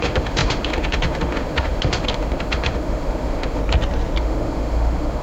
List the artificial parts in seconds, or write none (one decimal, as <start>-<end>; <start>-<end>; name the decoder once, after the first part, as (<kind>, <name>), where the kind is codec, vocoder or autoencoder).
0.0-3.6 (autoencoder, DAC-VAE); 4.2-5.2